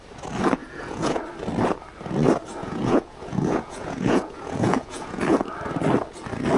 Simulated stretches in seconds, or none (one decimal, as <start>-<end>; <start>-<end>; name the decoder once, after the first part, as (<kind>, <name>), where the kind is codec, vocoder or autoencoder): 0.6-1.2 (vocoder, Vocos); 2.6-5.2